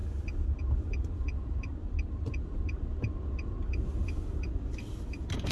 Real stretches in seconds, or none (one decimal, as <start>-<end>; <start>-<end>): 0.6-1.7; 3.6-5.5